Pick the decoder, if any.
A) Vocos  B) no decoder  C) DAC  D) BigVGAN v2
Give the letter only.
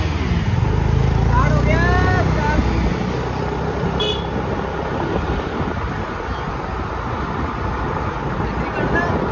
B